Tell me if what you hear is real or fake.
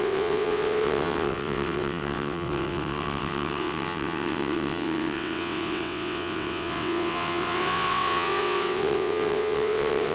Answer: fake